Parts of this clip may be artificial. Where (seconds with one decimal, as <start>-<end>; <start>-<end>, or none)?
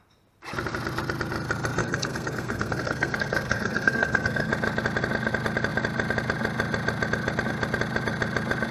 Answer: 1.8-4.5